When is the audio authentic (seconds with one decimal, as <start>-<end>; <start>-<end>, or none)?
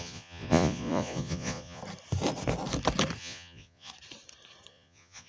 1.8-3.2; 3.9-4.7